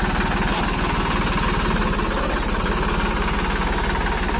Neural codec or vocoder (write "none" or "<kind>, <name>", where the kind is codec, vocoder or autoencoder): none